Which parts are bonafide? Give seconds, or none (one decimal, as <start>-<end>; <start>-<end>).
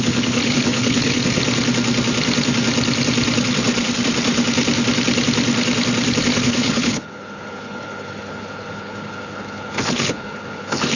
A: 1.4-6.2